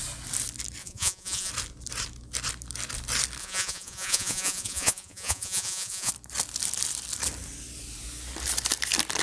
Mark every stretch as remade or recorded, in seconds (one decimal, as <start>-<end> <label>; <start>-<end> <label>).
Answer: 0.0-0.8 recorded; 0.8-1.5 remade; 1.5-3.4 recorded; 3.4-6.1 remade; 6.1-9.2 recorded